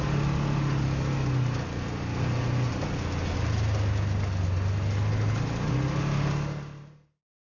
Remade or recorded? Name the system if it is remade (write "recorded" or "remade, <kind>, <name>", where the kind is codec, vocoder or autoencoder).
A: recorded